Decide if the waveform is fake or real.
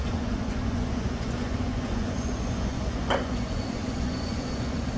fake